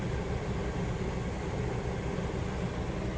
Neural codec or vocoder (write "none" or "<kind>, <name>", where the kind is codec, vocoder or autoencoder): none